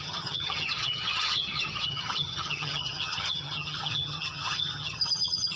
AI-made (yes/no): yes